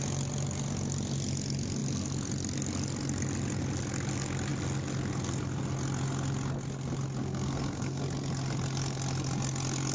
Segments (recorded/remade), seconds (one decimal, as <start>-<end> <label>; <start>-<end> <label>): 0.0-7.2 recorded; 7.2-8.0 remade; 8.0-9.9 recorded